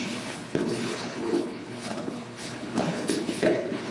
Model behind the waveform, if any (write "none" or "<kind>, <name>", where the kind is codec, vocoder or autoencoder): codec, HILCodec